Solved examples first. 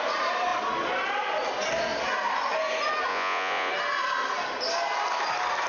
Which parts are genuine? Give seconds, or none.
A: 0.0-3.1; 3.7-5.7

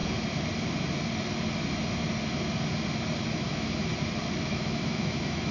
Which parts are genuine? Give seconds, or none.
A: 0.0-3.3; 3.9-4.5

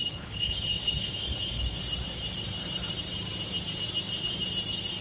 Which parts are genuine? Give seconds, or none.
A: 1.8-5.0

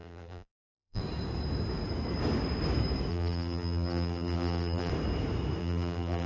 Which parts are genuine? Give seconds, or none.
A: 1.0-3.1; 4.9-5.6

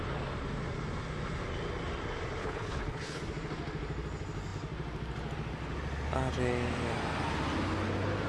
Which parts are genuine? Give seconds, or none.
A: 0.0-2.4; 3.2-8.3

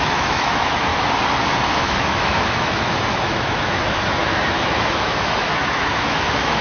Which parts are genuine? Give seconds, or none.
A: 0.9-1.8

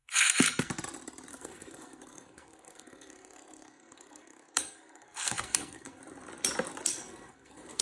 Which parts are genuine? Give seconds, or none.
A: 0.7-1.3; 6.0-6.9

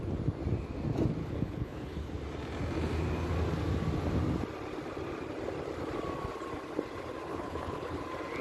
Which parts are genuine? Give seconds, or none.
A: 0.0-1.2; 2.1-7.3; 8.0-8.4